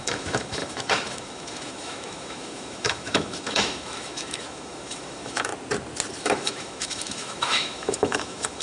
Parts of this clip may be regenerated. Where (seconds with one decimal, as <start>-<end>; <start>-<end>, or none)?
0.0-5.5; 6.2-8.6